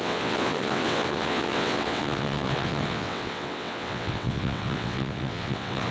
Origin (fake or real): fake